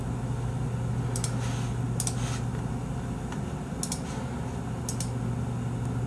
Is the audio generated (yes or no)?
no